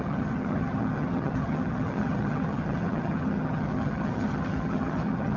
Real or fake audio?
fake